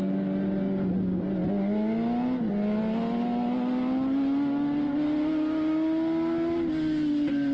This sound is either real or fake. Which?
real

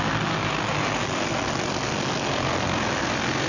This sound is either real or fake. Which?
real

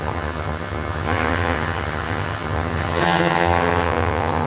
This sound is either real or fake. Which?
fake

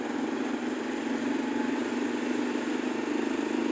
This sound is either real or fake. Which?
real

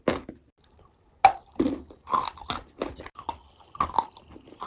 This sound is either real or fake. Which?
real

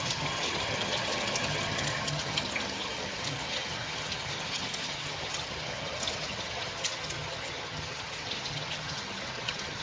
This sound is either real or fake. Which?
fake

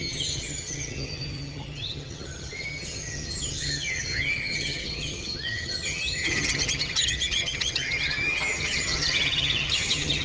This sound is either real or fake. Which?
fake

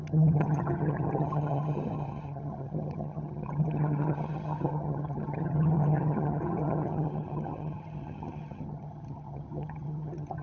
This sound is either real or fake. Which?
fake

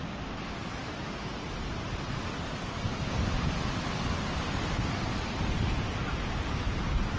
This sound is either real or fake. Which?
real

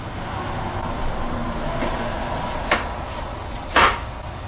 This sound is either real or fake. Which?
real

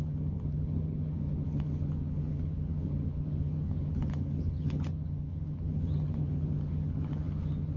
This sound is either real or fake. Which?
fake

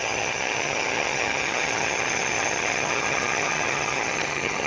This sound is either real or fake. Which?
fake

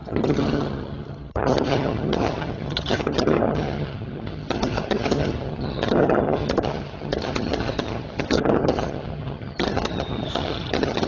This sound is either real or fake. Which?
fake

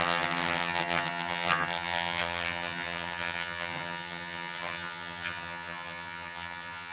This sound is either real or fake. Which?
fake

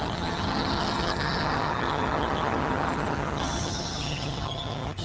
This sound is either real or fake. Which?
fake